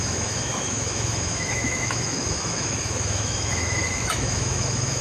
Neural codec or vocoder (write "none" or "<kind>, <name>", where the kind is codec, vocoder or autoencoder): autoencoder, DAC-VAE